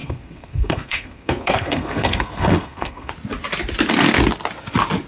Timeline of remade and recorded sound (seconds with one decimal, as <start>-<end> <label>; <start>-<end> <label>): 0.0-3.1 remade; 3.1-5.1 recorded